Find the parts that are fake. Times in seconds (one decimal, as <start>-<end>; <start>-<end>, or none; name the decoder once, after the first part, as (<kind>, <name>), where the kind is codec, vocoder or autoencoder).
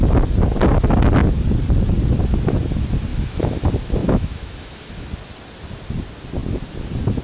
3.1-3.6 (autoencoder, DAC-VAE); 4.0-5.1